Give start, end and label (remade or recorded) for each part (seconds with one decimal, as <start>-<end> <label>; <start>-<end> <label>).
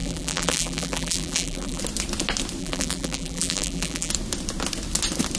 0.0-1.8 remade; 1.8-2.6 recorded; 2.6-4.1 remade; 4.1-5.4 recorded